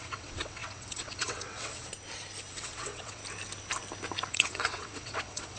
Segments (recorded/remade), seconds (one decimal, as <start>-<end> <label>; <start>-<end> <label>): 0.0-1.9 remade; 1.9-2.5 recorded; 2.5-3.2 remade; 3.2-4.3 recorded; 4.3-5.6 remade